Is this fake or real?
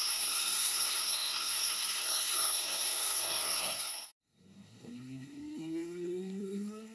fake